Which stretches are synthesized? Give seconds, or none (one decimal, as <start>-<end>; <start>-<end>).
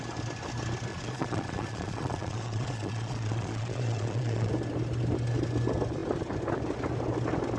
0.9-4.5